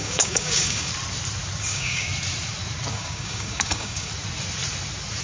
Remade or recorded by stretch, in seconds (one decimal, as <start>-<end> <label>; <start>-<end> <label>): 0.0-0.9 remade; 0.9-1.6 recorded; 1.6-2.1 remade; 2.1-2.9 recorded; 2.9-4.1 remade; 4.1-5.2 recorded